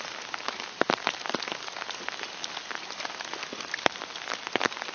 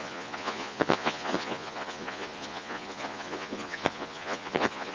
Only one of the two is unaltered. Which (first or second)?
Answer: first